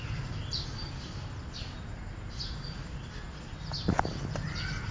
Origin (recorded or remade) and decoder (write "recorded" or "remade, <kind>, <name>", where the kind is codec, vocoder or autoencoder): recorded